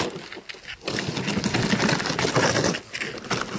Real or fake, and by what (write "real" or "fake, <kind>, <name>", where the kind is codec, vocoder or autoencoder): real